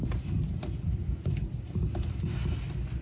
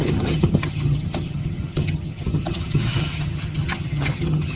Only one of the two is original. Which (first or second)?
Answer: first